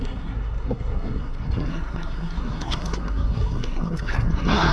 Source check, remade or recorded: remade